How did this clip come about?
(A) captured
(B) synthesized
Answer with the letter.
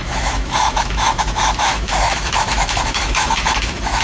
B